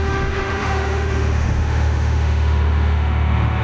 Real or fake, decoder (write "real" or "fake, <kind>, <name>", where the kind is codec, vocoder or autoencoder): fake, autoencoder, DAC-VAE